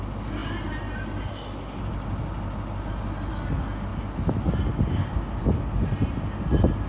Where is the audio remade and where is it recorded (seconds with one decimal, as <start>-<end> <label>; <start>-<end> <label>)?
0.0-6.9 recorded